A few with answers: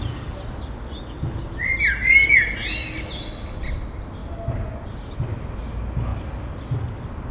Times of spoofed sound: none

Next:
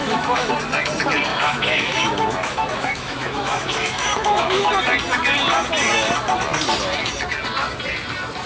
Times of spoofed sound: 0.0-0.5 (autoencoder, DAC-VAE); 1.3-4.7

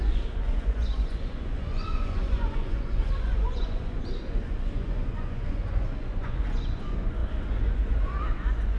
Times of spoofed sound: 0.0-8.8 (vocoder, Vocos)